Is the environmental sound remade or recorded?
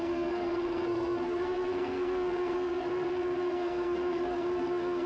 remade